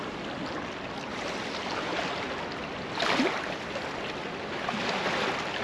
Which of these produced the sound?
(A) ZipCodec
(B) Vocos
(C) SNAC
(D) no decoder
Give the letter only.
D